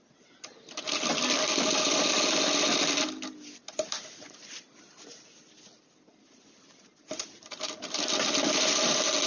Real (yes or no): yes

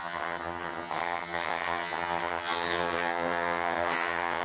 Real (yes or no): no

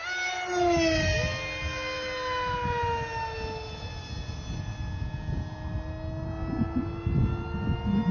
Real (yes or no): yes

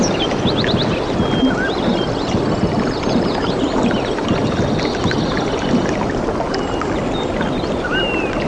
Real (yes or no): yes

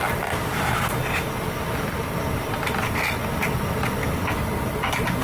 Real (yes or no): yes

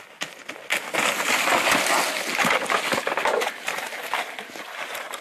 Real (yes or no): yes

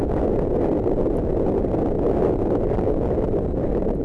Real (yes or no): yes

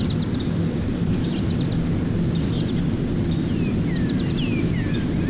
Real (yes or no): no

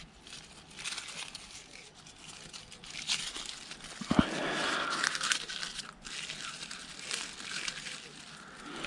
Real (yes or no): yes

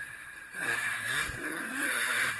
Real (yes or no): no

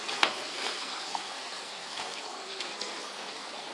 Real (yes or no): no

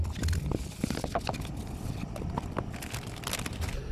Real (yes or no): yes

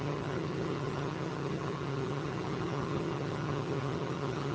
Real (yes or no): no